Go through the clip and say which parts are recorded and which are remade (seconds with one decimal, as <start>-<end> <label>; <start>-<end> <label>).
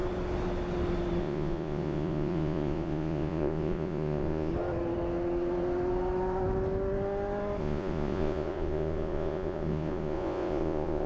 0.0-1.2 recorded; 1.2-4.5 remade; 4.5-7.6 recorded; 7.6-11.1 remade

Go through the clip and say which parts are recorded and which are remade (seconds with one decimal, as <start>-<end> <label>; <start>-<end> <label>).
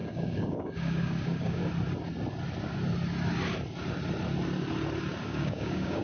0.0-1.6 remade; 1.6-5.2 recorded; 5.2-6.0 remade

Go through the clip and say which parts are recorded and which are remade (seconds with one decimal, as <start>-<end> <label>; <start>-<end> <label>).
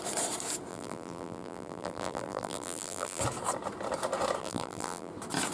0.0-0.7 recorded; 0.7-3.2 remade; 3.2-4.4 recorded; 4.4-5.1 remade; 5.1-5.5 recorded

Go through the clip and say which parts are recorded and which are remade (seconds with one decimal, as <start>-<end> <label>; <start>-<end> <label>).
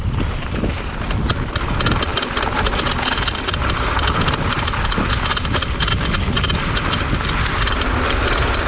0.0-8.7 recorded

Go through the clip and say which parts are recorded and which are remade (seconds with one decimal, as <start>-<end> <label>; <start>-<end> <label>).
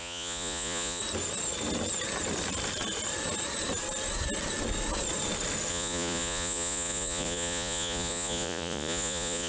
0.0-1.0 remade; 1.0-5.7 recorded; 5.7-9.5 remade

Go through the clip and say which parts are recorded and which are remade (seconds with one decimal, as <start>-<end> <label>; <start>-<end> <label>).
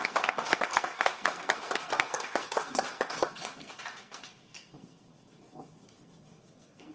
0.0-6.9 remade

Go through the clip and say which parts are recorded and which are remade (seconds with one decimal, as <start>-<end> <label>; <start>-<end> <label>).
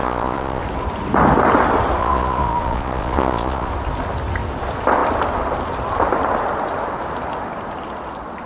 0.0-0.6 remade; 0.6-2.0 recorded; 2.0-3.7 remade; 3.7-8.5 recorded